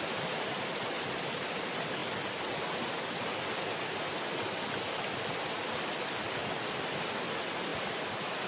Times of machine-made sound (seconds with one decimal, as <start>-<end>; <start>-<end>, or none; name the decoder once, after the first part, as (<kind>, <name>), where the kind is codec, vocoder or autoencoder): none